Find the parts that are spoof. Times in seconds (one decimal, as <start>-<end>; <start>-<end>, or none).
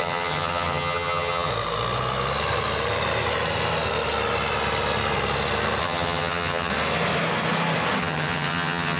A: 0.0-1.5; 5.8-6.7; 8.0-9.0